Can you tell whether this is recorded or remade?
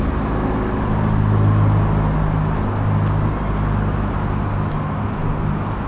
recorded